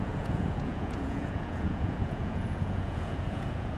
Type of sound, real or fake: fake